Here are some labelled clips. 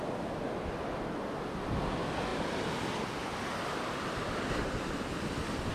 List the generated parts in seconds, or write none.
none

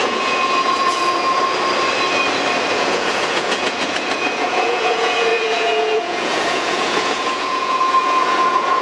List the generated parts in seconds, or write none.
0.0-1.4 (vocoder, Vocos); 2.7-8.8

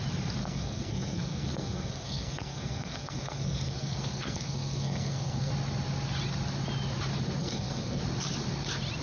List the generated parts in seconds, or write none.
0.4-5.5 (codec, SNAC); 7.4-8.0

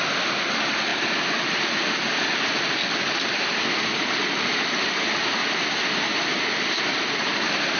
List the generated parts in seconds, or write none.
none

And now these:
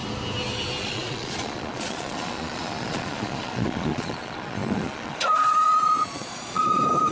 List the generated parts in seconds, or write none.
0.8-7.1 (vocoder, Vocos)

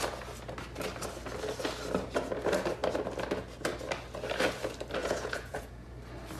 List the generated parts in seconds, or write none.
5.0-5.9 (vocoder, Vocos)